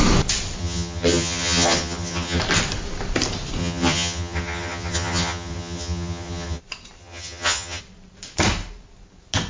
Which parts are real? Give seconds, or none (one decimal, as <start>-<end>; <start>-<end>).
0.0-0.6; 2.4-3.6; 6.6-7.0; 7.8-9.5